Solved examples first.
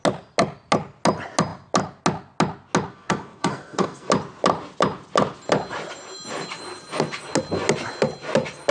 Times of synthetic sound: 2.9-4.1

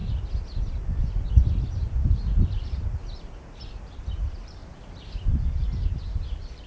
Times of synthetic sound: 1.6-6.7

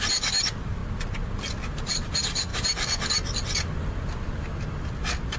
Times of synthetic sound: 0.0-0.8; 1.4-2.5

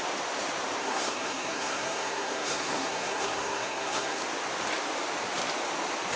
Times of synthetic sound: 0.8-4.2